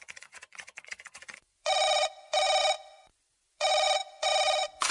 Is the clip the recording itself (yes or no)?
no